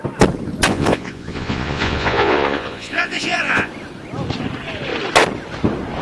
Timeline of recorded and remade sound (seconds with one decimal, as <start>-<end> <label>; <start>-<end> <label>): 0.0-0.7 recorded; 0.7-3.7 remade; 3.7-6.0 recorded